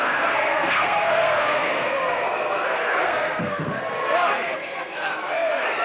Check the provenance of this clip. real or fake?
fake